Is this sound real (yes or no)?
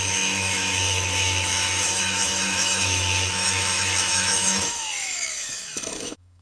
no